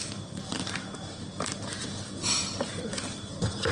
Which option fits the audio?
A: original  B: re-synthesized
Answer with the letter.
B